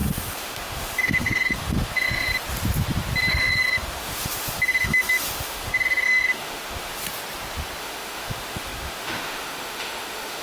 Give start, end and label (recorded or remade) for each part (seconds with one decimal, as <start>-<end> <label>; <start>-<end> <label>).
0.0-2.3 remade; 2.3-3.3 recorded; 3.3-6.9 remade; 6.9-7.8 recorded; 7.8-10.4 remade